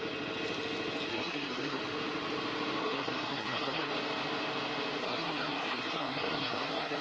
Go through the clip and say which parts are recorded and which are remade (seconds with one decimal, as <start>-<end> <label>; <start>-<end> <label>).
0.0-1.1 recorded; 1.1-1.8 remade; 1.8-2.8 recorded; 2.8-3.9 remade; 3.9-5.0 recorded; 5.0-7.0 remade